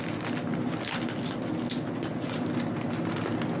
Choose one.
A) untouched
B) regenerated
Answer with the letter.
A